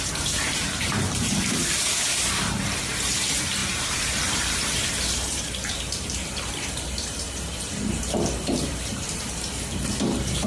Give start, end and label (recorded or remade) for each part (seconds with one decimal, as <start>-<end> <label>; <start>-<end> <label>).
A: 0.0-10.5 remade